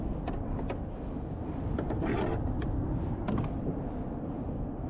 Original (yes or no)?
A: yes